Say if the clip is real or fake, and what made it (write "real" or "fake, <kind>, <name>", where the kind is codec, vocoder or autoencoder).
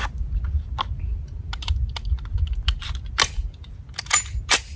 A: real